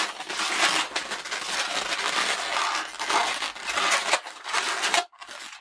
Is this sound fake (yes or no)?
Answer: no